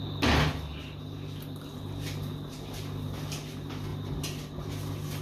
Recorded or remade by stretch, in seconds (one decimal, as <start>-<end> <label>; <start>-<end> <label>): 0.0-5.2 recorded